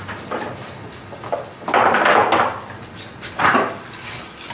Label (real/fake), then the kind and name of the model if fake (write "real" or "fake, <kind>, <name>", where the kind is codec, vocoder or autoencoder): real